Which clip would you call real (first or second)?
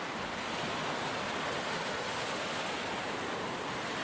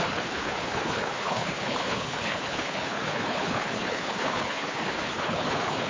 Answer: first